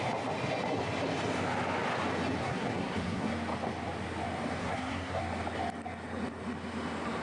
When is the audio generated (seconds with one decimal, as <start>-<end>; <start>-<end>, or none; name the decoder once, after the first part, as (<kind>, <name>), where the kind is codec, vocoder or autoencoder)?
2.4-3.3 (codec, SNAC); 4.6-5.2